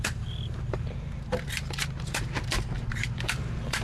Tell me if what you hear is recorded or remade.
remade